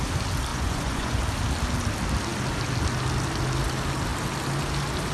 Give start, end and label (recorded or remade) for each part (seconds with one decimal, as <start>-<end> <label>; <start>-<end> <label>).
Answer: 0.0-0.5 recorded; 0.5-1.2 remade; 1.2-5.1 recorded